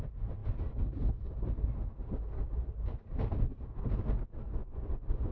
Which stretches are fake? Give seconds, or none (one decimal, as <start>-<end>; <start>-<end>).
4.6-5.3